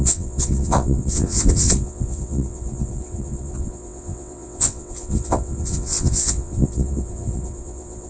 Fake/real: fake